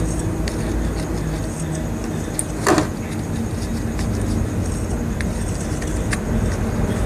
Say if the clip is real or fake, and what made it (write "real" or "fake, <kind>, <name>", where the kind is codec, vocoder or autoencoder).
real